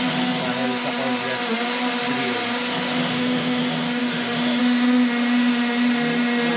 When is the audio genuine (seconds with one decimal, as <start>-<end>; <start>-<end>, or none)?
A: 0.0-3.1; 3.6-4.0; 4.6-6.6